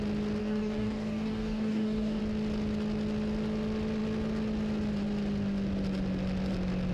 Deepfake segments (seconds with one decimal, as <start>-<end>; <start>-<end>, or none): 0.4-2.2